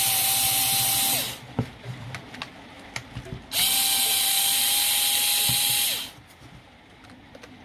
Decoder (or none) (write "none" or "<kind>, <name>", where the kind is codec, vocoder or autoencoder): none